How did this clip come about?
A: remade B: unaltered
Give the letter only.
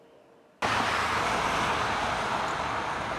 B